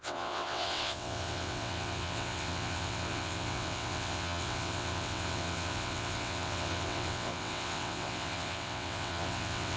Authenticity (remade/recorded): remade